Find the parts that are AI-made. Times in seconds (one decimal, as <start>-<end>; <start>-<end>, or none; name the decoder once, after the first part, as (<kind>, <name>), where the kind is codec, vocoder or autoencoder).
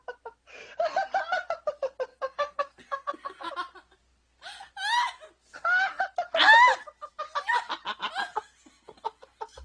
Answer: 2.1-3.5 (codec, SNAC)